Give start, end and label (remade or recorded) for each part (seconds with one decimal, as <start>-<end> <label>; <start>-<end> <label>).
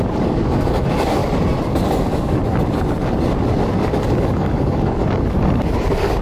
0.0-1.2 remade; 1.2-2.0 recorded; 2.0-2.4 remade; 2.4-3.8 recorded; 3.8-6.2 remade